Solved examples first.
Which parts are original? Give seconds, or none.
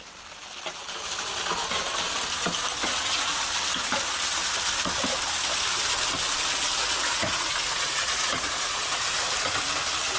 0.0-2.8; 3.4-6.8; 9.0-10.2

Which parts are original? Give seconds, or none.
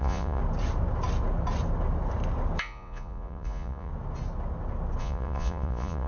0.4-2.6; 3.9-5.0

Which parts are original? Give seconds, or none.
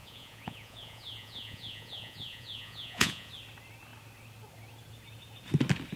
3.3-6.0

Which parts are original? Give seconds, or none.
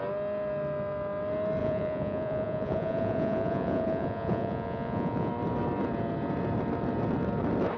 0.0-1.6; 5.3-7.8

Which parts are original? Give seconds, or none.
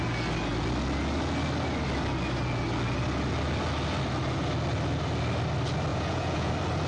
0.0-5.9; 6.5-6.9